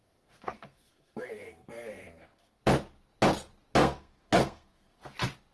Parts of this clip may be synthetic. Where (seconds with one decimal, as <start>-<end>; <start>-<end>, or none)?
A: 0.0-2.6; 3.8-5.0